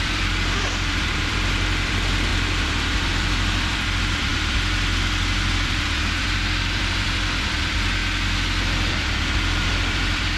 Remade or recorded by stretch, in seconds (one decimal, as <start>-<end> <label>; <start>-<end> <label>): 0.0-8.0 remade; 8.0-8.9 recorded; 8.9-10.4 remade